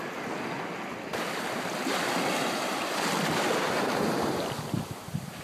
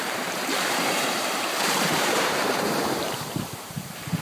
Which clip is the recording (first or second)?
first